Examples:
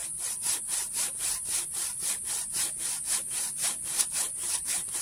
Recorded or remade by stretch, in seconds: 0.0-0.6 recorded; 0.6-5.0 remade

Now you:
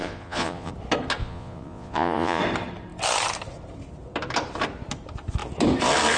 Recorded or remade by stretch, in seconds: 0.0-0.7 remade; 0.7-1.2 recorded; 1.2-2.4 remade; 2.4-6.2 recorded

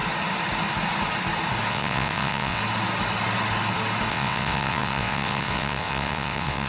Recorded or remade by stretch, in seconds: 0.0-1.7 recorded; 1.7-2.6 remade; 2.6-4.1 recorded; 4.1-6.7 remade

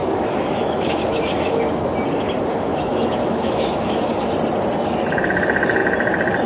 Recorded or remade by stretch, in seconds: 0.0-1.7 remade; 1.7-2.5 recorded; 2.5-4.1 remade; 4.1-6.5 recorded

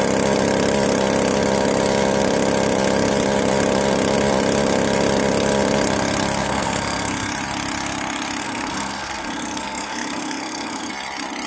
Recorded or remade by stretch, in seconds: 0.0-6.4 recorded; 6.4-7.3 remade; 7.3-8.4 recorded; 8.4-10.9 remade; 10.9-11.5 recorded

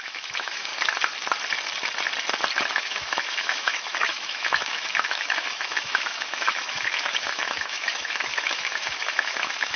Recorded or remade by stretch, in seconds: 0.0-0.7 remade; 0.7-2.7 recorded; 2.7-9.8 remade

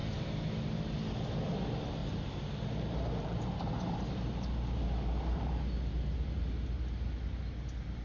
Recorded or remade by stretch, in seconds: 0.0-0.8 remade; 0.8-2.0 recorded; 2.0-6.5 remade; 6.5-8.0 recorded

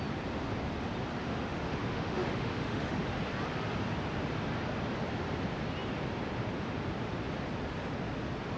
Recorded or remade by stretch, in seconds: 0.0-1.2 recorded; 1.2-3.0 remade; 3.0-8.6 recorded